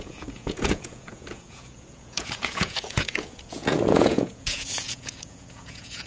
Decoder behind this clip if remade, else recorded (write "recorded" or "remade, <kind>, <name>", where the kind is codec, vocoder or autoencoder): remade, vocoder, Vocos